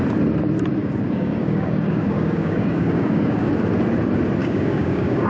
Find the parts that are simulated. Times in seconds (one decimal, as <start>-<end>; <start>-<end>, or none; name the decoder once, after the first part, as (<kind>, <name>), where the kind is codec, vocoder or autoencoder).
0.8-3.5 (codec, DAC); 4.4-5.3